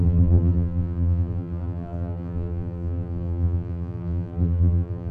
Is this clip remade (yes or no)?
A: yes